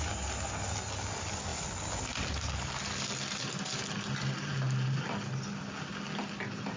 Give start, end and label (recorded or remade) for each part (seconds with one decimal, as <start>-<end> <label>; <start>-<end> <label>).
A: 0.0-6.8 recorded